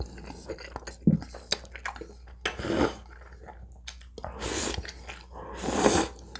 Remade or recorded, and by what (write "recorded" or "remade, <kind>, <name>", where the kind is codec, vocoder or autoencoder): recorded